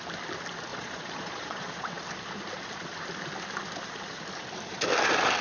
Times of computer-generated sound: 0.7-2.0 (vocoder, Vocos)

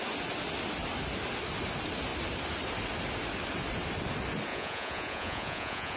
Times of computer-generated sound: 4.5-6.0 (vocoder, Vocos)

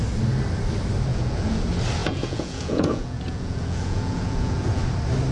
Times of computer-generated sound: 1.1-1.6 (vocoder, Vocos); 2.0-4.8

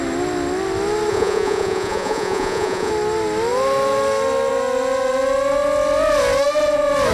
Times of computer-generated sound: 1.1-2.9 (vocoder, Vocos)

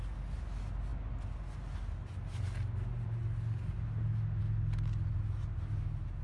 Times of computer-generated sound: none